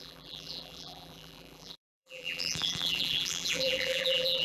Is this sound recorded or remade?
remade